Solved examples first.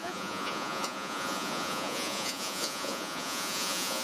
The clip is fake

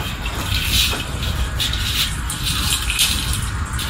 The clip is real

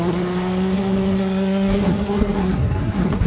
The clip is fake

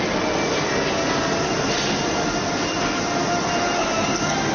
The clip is real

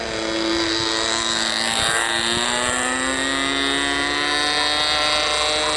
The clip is real